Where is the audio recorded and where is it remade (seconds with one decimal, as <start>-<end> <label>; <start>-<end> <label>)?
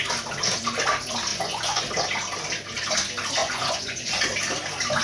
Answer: 0.0-1.3 recorded; 1.3-1.8 remade; 1.8-3.4 recorded; 3.4-4.2 remade; 4.2-5.0 recorded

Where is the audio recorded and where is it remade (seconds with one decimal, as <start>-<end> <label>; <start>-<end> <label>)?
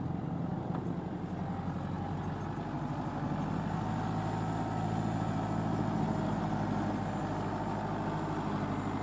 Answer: 0.0-9.0 recorded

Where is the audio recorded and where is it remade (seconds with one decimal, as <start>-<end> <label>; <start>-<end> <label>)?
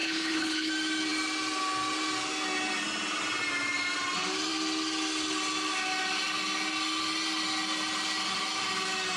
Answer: 0.0-0.7 remade; 0.7-9.2 recorded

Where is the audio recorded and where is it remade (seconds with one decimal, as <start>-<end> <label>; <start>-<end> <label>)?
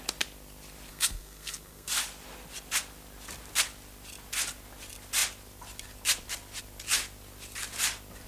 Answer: 0.0-0.9 recorded; 0.9-1.9 remade; 1.9-8.3 recorded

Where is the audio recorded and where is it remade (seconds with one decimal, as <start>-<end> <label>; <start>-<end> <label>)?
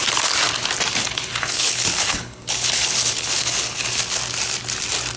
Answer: 0.0-0.9 recorded; 0.9-4.0 remade; 4.0-5.2 recorded